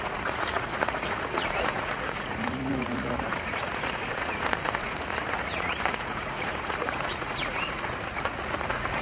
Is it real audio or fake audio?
fake